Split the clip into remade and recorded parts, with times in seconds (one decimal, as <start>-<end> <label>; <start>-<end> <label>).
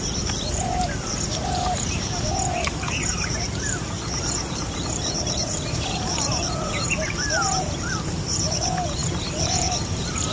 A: 0.0-10.3 remade